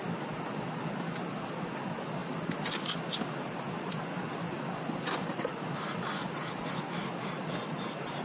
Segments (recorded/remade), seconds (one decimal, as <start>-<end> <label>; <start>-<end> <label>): 0.0-8.2 recorded